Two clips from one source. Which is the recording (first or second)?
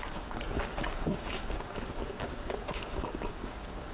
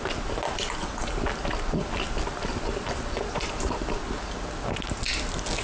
second